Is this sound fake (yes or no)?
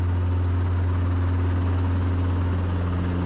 no